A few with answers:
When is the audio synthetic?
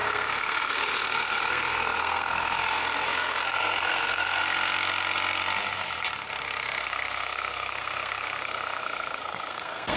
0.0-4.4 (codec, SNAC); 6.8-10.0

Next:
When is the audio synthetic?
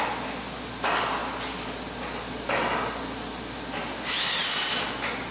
none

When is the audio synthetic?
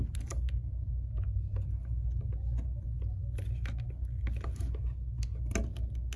none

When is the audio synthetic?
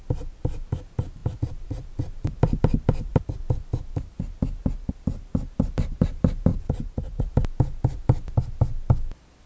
1.2-2.6 (vocoder, BigVGAN v2); 3.1-4.2; 6.5-7.2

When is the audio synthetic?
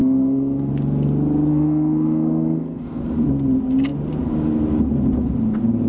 0.0-0.7 (codec, SNAC); 1.5-3.0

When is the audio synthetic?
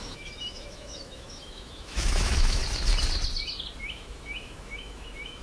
0.0-2.6 (autoencoder, DAC-VAE); 3.8-5.4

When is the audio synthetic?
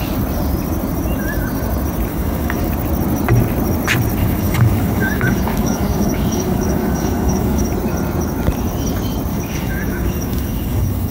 2.1-2.7 (codec, DAC); 4.2-7.7; 9.3-11.1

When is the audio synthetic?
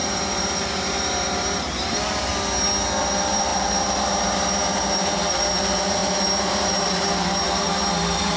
0.0-2.3 (vocoder, BigVGAN v2); 3.0-8.4